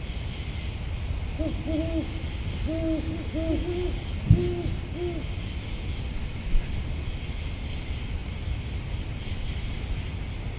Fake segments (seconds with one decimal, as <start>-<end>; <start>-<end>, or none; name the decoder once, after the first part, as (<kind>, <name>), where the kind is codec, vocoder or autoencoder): none

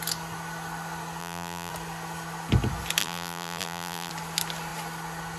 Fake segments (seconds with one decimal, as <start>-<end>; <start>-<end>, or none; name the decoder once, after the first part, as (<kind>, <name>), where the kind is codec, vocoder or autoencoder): 1.2-1.7 (vocoder, BigVGAN v2); 3.0-4.1

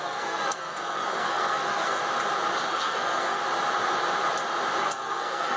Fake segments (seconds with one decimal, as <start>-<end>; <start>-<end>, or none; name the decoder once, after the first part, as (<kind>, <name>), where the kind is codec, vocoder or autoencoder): 0.0-2.0 (codec, SNAC); 2.7-3.4; 4.8-5.6

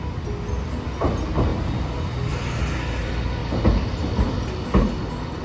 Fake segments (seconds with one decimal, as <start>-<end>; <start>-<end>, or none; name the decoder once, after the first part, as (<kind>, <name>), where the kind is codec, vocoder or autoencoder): none

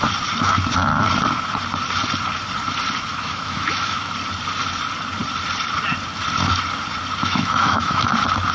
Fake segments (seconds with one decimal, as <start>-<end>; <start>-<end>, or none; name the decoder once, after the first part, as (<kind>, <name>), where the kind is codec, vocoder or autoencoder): 3.1-4.1 (autoencoder, DAC-VAE); 7.2-8.1

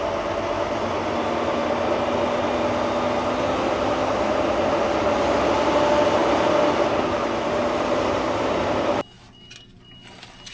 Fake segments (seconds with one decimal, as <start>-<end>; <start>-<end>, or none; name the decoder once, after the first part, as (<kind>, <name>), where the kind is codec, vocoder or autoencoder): none